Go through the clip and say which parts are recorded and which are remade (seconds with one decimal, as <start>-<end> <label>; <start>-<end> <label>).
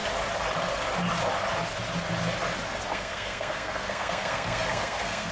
0.0-2.9 recorded; 2.9-5.3 remade